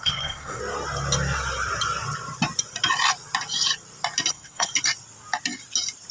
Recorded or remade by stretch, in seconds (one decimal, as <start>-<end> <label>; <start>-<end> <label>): 0.0-0.6 remade; 0.6-4.3 recorded; 4.3-4.7 remade; 4.7-6.1 recorded